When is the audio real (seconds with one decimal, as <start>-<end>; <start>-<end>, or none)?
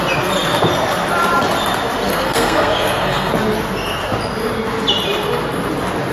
0.0-2.1; 3.3-6.1